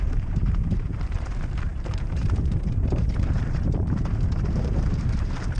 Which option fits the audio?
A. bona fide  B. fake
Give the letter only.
B